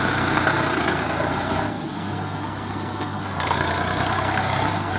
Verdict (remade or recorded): remade